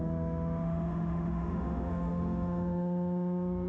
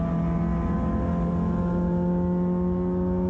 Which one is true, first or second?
second